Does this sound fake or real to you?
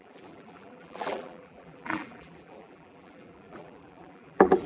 fake